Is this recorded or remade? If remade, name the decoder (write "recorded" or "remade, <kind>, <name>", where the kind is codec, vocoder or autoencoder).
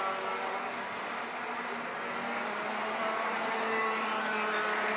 recorded